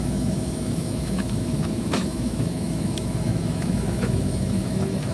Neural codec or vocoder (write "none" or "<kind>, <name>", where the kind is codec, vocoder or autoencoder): autoencoder, DAC-VAE